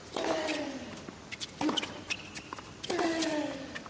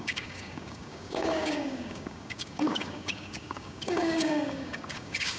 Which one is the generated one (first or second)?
second